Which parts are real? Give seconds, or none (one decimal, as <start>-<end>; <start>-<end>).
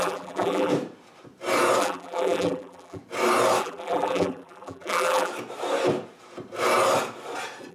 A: 0.7-1.8; 3.0-3.6; 5.3-7.7